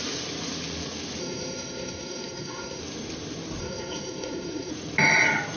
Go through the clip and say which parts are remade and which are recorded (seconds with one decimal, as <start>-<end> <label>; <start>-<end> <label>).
0.0-1.2 recorded; 1.2-2.8 remade; 2.8-3.6 recorded; 3.6-4.7 remade; 4.7-5.6 recorded